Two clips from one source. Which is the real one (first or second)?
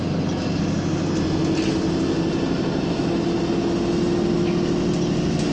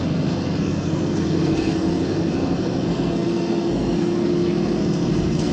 first